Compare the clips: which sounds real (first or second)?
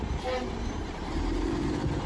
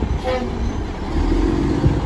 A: second